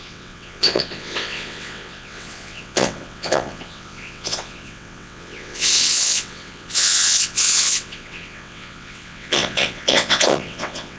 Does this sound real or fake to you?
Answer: fake